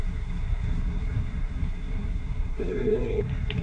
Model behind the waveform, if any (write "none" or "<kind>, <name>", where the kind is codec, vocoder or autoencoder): codec, SNAC